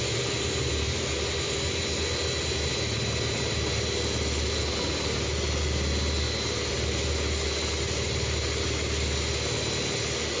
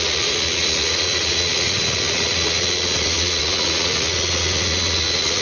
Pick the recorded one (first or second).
first